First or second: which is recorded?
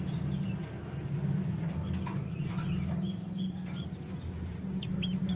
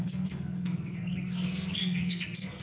first